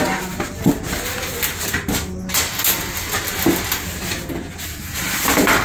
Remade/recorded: recorded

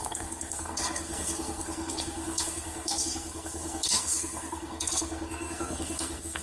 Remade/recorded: remade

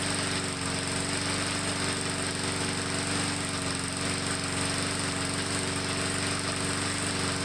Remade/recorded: recorded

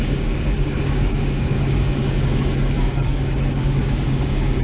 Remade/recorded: remade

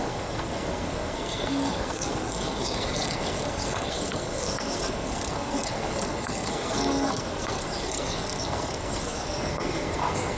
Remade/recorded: remade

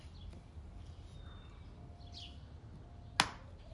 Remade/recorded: recorded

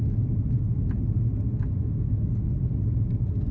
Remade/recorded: recorded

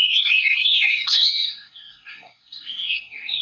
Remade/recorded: remade